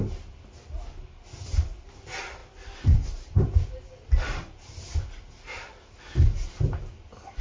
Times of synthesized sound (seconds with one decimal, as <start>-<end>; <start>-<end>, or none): none